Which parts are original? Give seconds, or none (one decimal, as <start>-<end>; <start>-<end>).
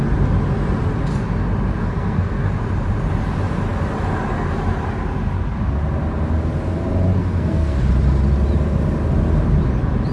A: 0.0-1.8; 2.5-7.2; 7.8-10.1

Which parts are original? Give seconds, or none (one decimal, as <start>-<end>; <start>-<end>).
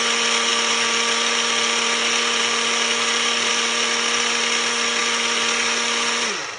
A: 0.0-6.6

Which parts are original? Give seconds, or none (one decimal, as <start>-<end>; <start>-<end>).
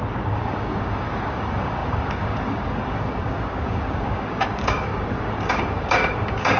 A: none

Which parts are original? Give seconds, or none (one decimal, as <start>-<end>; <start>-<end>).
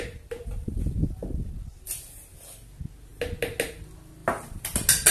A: 0.0-5.1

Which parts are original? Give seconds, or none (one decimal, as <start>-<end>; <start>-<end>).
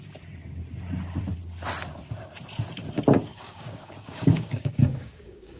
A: 0.0-3.3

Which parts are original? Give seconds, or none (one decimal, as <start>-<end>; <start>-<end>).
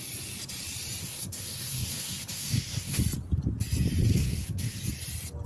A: 0.0-1.0; 3.0-4.0; 4.8-5.5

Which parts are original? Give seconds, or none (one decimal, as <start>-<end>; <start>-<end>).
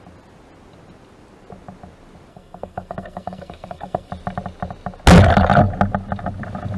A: 0.0-2.3; 4.1-6.8